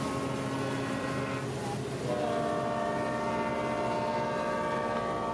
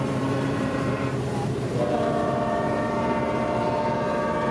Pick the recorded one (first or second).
first